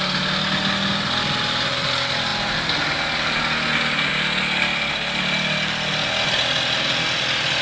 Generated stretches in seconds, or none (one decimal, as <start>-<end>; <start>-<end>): none